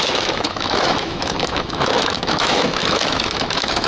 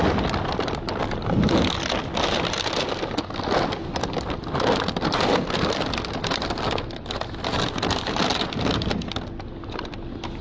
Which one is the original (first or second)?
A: second